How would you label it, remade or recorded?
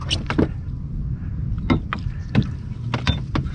recorded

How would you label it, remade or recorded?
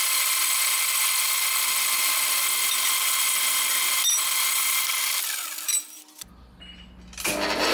recorded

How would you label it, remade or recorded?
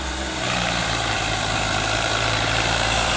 remade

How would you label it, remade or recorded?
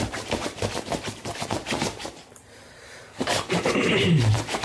remade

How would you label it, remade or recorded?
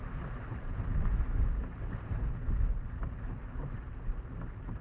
recorded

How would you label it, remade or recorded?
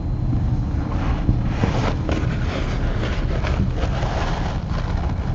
recorded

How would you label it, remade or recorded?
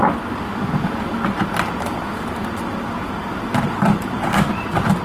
remade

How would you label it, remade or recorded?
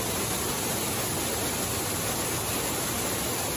recorded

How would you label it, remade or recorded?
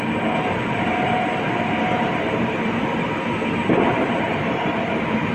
remade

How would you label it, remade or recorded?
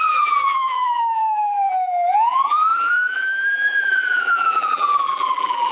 remade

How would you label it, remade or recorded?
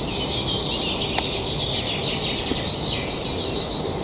recorded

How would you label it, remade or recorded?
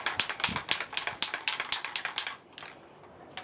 recorded